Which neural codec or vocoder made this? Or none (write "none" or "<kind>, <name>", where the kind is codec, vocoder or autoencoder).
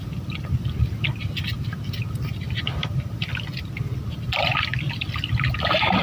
none